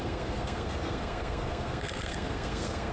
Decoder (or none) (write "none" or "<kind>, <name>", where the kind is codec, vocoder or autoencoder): codec, SNAC